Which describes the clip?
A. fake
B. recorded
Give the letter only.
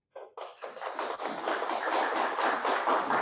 B